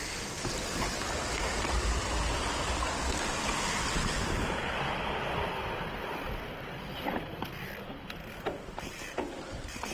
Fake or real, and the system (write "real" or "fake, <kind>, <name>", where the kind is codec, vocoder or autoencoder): real